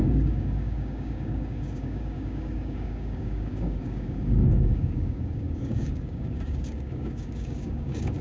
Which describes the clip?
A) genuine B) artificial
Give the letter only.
B